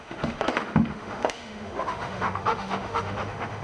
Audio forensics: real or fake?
fake